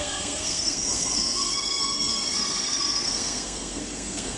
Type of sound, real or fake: fake